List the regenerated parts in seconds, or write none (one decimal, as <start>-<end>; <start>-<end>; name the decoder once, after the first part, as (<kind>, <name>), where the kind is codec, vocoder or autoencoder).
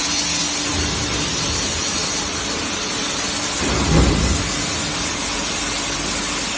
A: none